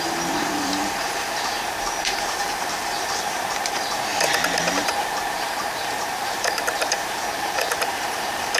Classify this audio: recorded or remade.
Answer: remade